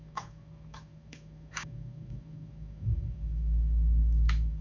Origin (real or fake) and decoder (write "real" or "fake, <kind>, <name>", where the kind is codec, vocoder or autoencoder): fake, autoencoder, DAC-VAE